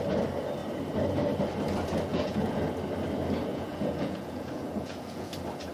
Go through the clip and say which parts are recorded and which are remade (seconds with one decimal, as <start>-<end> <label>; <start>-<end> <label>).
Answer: 0.0-2.1 recorded; 2.1-2.6 remade; 2.6-3.5 recorded; 3.5-5.3 remade; 5.3-5.7 recorded